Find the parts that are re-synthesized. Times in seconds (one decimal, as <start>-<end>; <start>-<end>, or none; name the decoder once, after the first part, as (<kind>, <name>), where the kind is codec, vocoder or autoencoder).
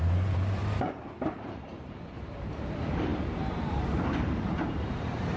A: 0.0-5.4 (vocoder, BigVGAN v2)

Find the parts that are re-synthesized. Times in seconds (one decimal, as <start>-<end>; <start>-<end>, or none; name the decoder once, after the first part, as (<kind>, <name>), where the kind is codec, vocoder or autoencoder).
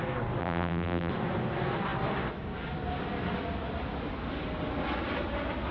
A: 0.4-1.1 (vocoder, BigVGAN v2)